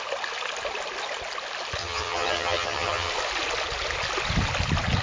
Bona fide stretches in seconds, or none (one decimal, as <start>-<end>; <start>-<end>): 0.0-1.8; 3.1-5.0